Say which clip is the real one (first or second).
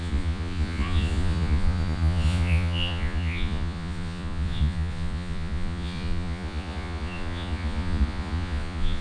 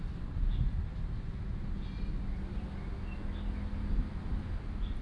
second